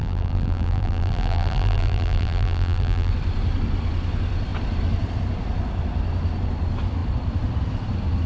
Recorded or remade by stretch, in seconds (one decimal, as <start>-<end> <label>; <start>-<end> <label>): 0.0-3.1 remade; 3.1-8.3 recorded